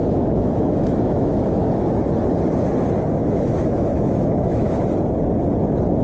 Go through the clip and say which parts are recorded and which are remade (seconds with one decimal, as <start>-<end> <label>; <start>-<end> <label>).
0.0-1.7 remade; 1.7-3.2 recorded; 3.2-4.8 remade; 4.8-6.0 recorded